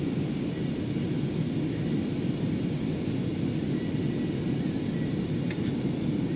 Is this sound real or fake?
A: real